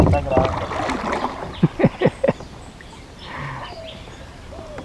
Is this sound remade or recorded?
recorded